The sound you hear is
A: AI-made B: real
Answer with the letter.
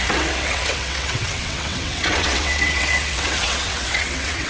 A